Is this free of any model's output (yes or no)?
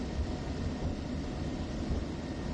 yes